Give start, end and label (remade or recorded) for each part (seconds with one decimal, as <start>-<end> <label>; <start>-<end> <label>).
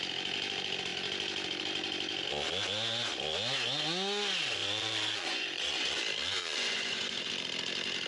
0.0-4.6 recorded; 4.6-6.0 remade; 6.0-6.4 recorded; 6.4-7.3 remade; 7.3-8.1 recorded